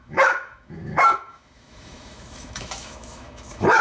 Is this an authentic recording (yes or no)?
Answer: no